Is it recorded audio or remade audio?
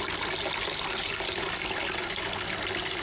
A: recorded